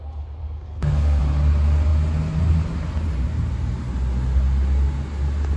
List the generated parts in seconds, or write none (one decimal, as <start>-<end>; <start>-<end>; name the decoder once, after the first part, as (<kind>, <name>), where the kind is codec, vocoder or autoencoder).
0.4-1.2 (codec, SNAC)